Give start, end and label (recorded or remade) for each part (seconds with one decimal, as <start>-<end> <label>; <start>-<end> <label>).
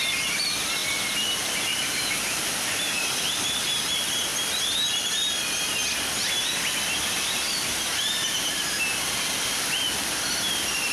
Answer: 0.0-4.3 remade; 4.3-5.1 recorded; 5.1-5.8 remade; 5.8-7.1 recorded; 7.1-10.9 remade